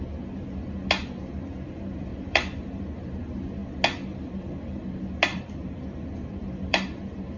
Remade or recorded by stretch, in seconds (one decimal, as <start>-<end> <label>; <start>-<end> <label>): 0.0-2.1 recorded; 2.1-2.8 remade; 2.8-5.3 recorded; 5.3-7.4 remade